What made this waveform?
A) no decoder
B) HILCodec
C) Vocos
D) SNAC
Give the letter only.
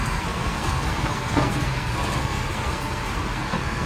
D